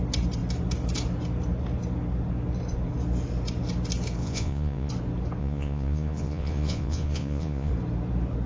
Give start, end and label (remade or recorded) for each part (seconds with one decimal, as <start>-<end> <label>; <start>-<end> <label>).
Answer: 0.0-4.2 recorded; 4.2-4.9 remade; 4.9-5.4 recorded; 5.4-7.7 remade; 7.7-8.5 recorded